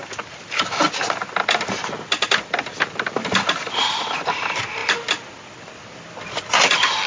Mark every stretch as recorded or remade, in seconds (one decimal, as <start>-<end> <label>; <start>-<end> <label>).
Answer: 0.0-1.2 remade; 1.2-4.8 recorded; 4.8-6.4 remade; 6.4-7.1 recorded